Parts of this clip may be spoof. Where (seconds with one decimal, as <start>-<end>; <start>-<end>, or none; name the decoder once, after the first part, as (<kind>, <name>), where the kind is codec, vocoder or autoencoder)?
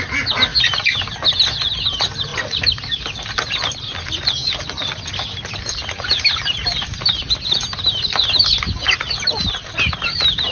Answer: none